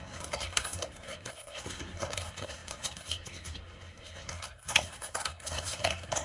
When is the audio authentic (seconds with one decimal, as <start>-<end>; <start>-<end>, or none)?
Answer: none